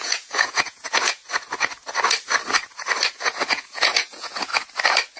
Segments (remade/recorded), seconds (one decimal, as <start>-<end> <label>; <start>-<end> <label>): 0.0-1.2 remade; 1.2-3.1 recorded; 3.1-4.5 remade; 4.5-5.2 recorded